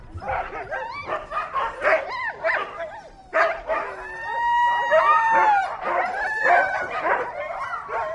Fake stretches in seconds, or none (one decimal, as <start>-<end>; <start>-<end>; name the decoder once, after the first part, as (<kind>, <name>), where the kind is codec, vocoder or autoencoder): none